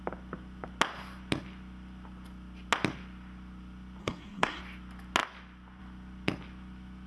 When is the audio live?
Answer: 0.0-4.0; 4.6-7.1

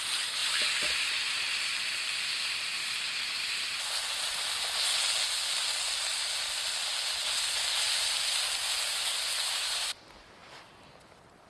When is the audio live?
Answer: 0.0-11.5

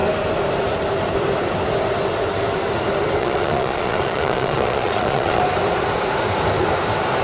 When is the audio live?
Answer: 0.0-3.2; 5.4-7.2

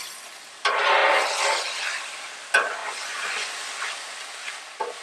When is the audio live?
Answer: 0.0-2.8; 3.5-5.0

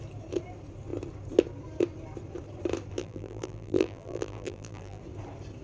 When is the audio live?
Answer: 0.0-3.0; 5.0-5.6